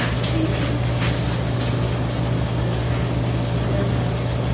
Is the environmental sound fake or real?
real